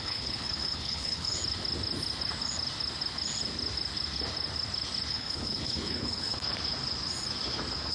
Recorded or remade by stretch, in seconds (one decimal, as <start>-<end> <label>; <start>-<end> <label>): 0.0-1.4 remade; 1.4-5.1 recorded; 5.1-6.5 remade; 6.5-7.9 recorded